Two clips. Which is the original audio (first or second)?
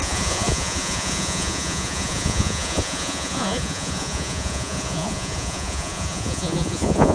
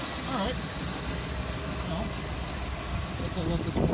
second